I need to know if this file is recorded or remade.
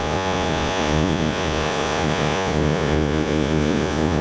remade